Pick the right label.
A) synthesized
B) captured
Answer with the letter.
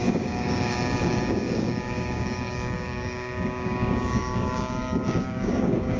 A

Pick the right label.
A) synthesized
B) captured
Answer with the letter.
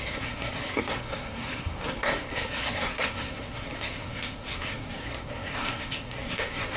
A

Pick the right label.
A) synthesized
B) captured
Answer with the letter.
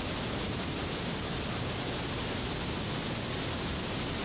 B